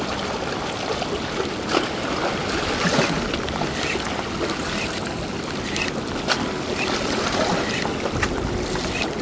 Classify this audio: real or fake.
real